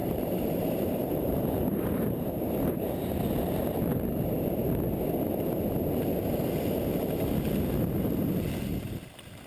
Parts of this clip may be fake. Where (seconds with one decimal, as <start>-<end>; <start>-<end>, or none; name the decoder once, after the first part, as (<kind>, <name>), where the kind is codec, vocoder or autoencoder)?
0.0-3.1 (vocoder, BigVGAN v2)